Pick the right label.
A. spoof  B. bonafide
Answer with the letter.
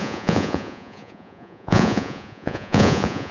A